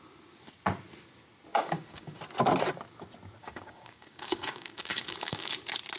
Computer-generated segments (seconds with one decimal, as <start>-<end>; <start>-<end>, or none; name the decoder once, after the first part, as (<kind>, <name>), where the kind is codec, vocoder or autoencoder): 1.5-2.2 (codec, DAC); 3.4-5.5